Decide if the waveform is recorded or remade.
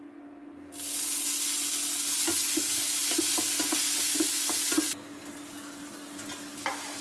recorded